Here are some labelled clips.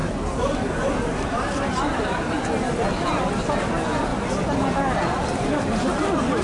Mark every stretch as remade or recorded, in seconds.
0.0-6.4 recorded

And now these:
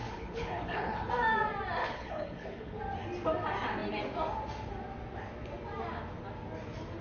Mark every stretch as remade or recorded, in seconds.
0.0-1.1 remade; 1.1-1.8 recorded; 1.8-2.8 remade; 2.8-7.0 recorded

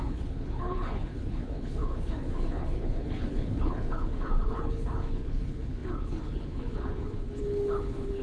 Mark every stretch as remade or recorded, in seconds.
0.0-8.2 remade

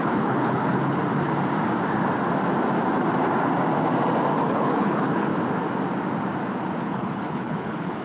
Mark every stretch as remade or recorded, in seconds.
0.0-1.0 remade; 1.0-4.4 recorded; 4.4-5.3 remade; 5.3-6.8 recorded; 6.8-8.0 remade

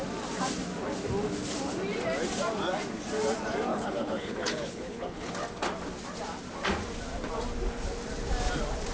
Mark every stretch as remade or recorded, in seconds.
0.0-3.7 recorded; 3.7-5.3 remade; 5.3-8.9 recorded

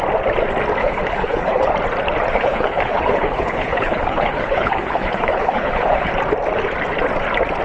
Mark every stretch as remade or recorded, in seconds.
0.0-0.8 recorded; 0.8-1.7 remade; 1.7-2.3 recorded; 2.3-6.1 remade; 6.1-7.6 recorded

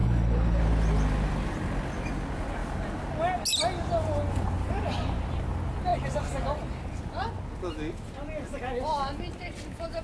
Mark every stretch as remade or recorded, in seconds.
0.0-0.6 remade; 0.6-10.0 recorded